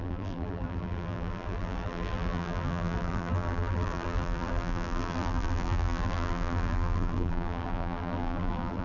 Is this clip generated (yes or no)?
yes